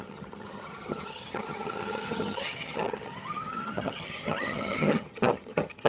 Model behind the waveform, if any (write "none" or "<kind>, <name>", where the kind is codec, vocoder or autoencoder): vocoder, HiFi-GAN